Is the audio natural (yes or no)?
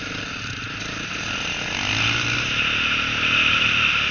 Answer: yes